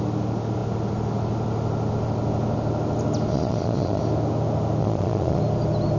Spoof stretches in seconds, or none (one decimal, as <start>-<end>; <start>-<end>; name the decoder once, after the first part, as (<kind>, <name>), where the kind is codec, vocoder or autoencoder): 3.3-4.0 (vocoder, Vocos); 4.8-5.4